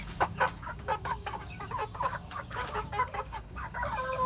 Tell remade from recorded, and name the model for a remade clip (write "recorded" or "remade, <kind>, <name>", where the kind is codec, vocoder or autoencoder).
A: remade, codec, DAC